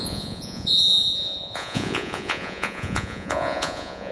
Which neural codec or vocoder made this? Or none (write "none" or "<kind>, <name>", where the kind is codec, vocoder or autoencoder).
vocoder, Vocos